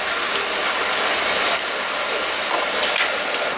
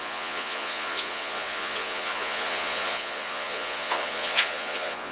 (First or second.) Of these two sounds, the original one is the first